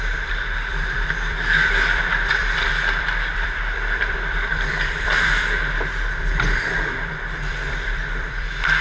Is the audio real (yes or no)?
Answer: no